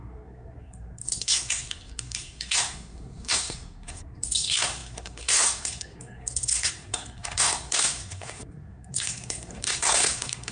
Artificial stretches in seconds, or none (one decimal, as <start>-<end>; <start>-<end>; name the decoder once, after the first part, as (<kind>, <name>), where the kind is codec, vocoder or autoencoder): 0.0-10.5 (codec, SNAC)